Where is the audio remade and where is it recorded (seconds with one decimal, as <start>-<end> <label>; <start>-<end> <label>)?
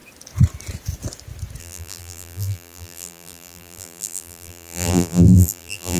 0.0-1.6 recorded; 1.6-6.0 remade